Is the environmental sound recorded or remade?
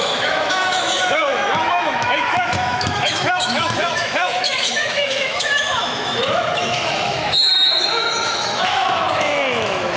remade